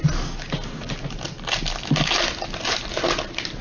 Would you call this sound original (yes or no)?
yes